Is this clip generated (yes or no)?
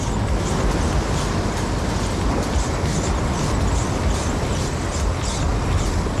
no